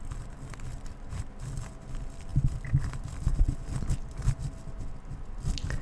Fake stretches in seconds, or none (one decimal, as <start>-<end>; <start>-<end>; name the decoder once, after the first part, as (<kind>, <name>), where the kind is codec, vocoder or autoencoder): none